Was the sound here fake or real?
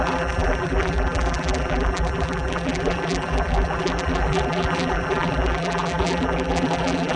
fake